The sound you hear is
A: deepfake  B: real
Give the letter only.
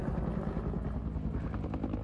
B